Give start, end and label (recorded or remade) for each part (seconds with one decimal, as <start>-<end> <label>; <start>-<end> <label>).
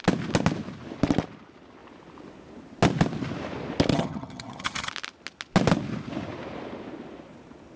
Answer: 0.0-3.9 recorded; 3.9-4.9 remade; 4.9-7.8 recorded